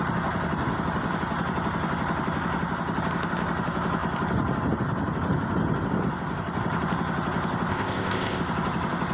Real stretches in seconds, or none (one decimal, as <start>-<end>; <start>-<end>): 0.0-7.7; 8.4-9.1